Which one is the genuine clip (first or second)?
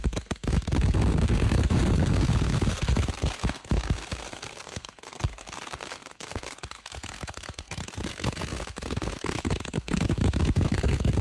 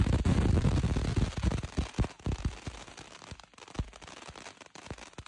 second